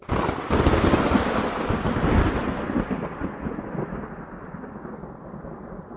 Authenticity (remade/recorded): recorded